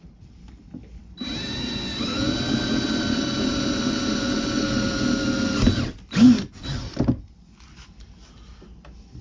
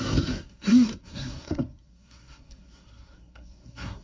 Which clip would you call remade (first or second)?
second